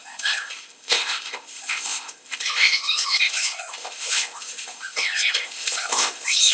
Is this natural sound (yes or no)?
no